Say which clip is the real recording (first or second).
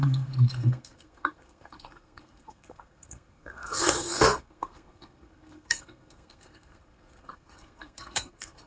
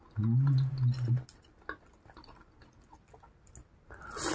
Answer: second